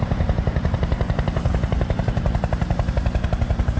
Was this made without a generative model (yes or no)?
no